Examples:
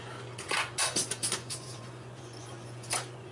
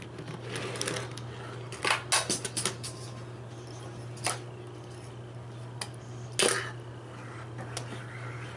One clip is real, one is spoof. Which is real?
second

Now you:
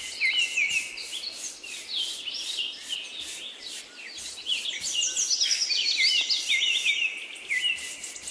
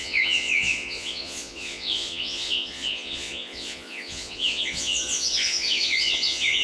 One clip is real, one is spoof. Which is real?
first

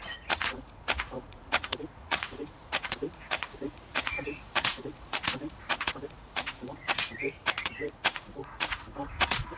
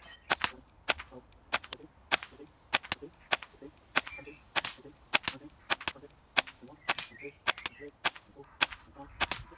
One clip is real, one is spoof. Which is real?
second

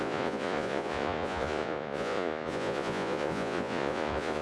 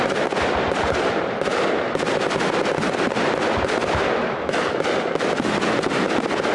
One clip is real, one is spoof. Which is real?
second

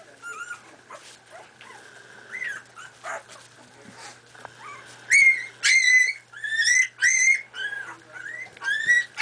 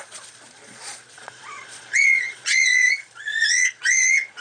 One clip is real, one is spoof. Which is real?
first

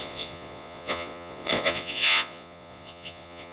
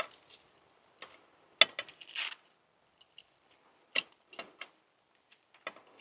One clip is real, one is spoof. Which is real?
second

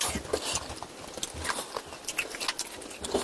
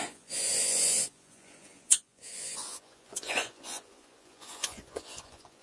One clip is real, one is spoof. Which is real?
first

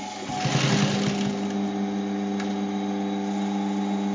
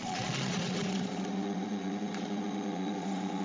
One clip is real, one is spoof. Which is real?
first